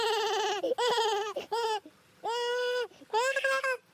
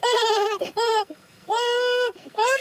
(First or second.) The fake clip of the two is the second